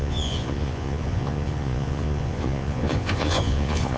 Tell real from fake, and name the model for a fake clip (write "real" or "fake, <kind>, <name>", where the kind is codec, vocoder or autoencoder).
fake, vocoder, Vocos